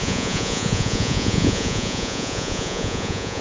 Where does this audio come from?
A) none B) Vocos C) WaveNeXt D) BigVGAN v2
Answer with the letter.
B